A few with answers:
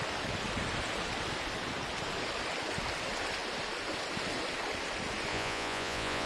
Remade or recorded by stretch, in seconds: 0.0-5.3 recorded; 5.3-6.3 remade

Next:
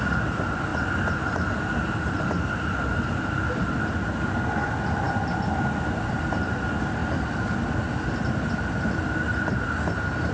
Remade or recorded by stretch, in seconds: 0.0-10.3 recorded